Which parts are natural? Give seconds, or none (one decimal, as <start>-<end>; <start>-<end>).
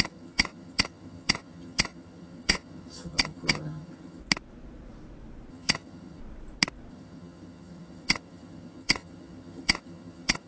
4.2-5.5; 6.2-6.9